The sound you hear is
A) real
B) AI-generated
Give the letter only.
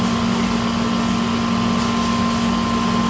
A